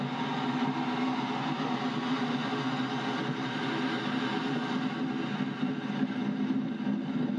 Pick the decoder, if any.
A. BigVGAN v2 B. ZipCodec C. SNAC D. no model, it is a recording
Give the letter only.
D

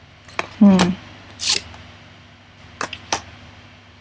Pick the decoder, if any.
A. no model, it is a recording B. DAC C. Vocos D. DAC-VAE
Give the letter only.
A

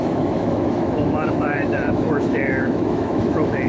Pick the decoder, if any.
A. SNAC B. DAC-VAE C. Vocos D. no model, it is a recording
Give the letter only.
B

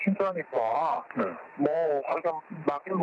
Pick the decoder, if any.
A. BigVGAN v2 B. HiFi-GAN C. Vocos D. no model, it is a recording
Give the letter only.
D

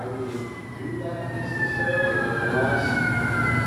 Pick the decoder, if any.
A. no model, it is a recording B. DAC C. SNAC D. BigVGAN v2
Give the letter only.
A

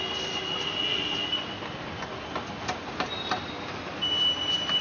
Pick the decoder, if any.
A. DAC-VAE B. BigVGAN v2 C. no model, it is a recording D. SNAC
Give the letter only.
C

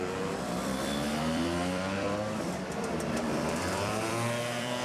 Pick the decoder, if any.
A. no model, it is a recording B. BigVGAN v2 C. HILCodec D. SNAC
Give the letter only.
B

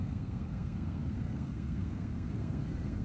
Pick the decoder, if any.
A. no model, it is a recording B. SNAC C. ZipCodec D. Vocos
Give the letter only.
B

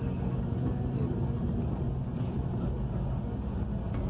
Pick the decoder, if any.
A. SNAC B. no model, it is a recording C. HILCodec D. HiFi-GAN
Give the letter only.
B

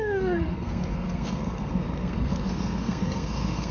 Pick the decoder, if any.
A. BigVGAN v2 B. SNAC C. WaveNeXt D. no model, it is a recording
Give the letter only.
B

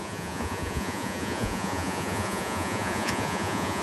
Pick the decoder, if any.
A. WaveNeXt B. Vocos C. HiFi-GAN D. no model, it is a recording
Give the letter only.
B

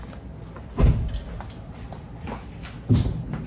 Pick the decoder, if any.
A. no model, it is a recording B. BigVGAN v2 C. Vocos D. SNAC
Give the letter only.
A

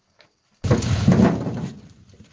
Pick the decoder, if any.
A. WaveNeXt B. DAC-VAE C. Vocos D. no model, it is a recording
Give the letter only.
D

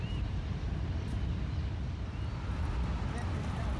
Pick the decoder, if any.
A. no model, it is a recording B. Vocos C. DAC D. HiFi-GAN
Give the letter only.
A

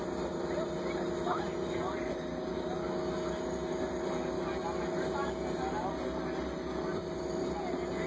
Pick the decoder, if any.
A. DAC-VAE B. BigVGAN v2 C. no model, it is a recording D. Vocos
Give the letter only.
C